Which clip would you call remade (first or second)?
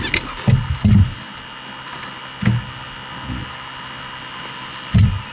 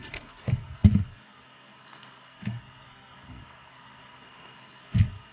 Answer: second